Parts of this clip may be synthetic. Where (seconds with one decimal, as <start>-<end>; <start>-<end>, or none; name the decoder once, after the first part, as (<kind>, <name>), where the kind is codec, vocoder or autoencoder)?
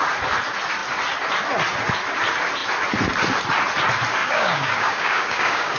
4.2-5.8 (codec, DAC)